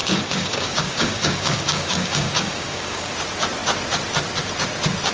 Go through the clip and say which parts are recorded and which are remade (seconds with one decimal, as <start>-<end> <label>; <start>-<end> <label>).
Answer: 0.0-3.1 remade; 3.1-5.1 recorded